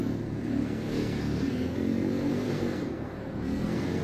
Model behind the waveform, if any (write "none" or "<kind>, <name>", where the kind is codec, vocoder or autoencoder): codec, SNAC